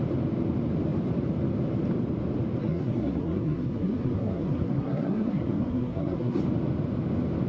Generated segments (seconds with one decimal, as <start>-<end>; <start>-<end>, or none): 2.6-6.4